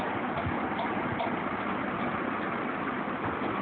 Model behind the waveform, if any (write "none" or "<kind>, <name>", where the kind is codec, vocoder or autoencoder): none